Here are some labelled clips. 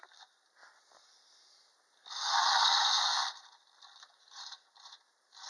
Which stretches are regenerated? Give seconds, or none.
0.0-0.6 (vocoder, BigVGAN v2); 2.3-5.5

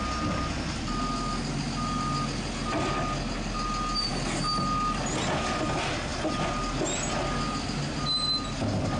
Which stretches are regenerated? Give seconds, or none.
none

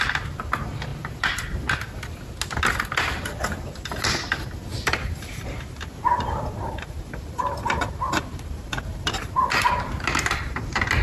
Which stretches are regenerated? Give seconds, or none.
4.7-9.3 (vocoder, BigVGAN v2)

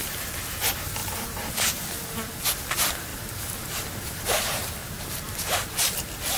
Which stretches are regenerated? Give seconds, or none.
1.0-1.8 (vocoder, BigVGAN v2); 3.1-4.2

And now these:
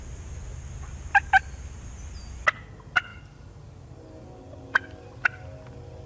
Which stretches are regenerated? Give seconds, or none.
none